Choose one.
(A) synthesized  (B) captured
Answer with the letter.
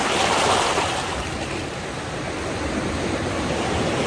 B